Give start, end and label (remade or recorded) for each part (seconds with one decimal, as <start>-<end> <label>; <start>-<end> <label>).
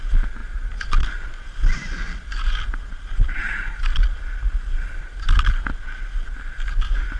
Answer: 0.0-7.2 recorded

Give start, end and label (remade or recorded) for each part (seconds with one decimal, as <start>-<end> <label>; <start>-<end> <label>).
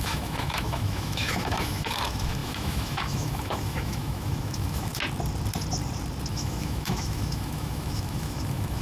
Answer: 0.0-4.9 remade; 4.9-6.3 recorded; 6.3-8.8 remade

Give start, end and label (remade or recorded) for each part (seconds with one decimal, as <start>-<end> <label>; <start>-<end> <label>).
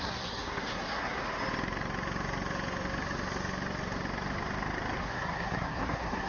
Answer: 0.0-1.2 remade; 1.2-5.0 recorded; 5.0-6.3 remade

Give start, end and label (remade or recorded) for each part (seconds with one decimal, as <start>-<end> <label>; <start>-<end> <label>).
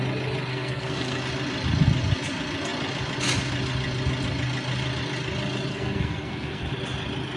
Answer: 0.0-0.5 recorded; 0.5-1.2 remade; 1.2-5.7 recorded; 5.7-6.7 remade; 6.7-7.4 recorded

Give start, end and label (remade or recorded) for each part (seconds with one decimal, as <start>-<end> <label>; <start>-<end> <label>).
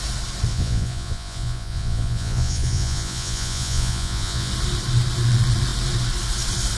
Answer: 0.0-0.5 recorded; 0.5-4.5 remade; 4.5-6.8 recorded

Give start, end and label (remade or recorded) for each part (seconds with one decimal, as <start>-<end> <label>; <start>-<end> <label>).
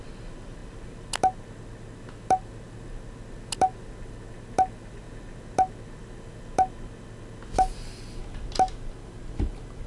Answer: 0.0-9.9 recorded